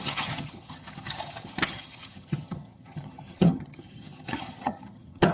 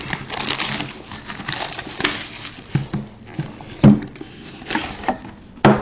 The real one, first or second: second